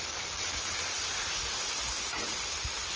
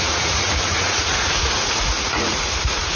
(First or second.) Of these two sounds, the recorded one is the first